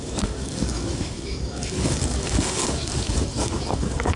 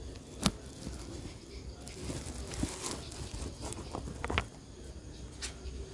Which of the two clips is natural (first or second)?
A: second